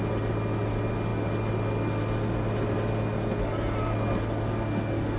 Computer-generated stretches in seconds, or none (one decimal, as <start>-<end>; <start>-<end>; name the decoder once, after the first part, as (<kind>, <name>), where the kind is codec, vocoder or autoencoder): none

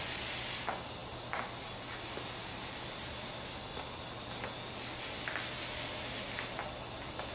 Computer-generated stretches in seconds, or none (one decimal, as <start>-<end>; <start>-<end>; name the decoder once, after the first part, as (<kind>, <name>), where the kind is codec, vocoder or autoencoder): none

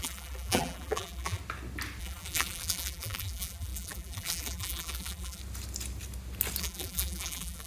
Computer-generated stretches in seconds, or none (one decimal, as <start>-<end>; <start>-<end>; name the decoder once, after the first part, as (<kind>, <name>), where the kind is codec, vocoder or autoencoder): 0.0-1.4 (vocoder, BigVGAN v2); 2.0-5.4; 6.6-7.7

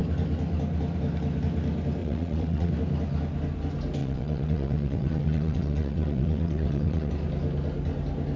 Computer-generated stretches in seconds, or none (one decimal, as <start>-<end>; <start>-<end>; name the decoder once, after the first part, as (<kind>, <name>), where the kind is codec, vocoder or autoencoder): 2.0-2.7 (vocoder, WaveNeXt); 4.0-7.1

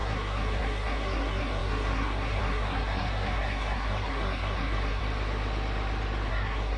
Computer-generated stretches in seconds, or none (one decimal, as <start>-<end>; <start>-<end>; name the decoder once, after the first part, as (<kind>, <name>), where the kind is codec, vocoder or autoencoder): 0.0-5.0 (codec, SNAC); 6.3-6.8